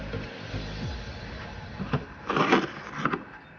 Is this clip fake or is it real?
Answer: real